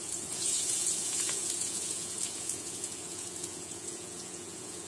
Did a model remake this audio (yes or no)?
yes